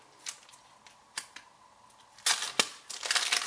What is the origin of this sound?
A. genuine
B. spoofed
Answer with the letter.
A